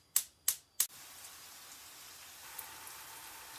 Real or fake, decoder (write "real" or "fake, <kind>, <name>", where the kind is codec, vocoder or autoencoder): real